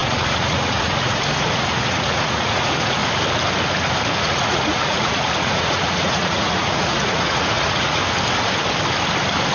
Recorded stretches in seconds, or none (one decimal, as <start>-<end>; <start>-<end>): 3.0-4.2; 8.0-9.5